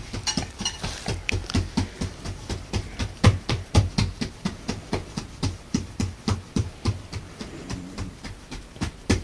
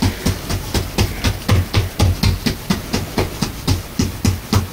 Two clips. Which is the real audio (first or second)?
second